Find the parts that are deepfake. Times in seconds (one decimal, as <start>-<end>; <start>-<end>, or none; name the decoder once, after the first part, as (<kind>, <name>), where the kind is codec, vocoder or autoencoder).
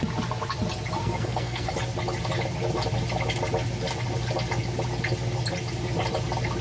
1.0-1.7 (codec, SNAC)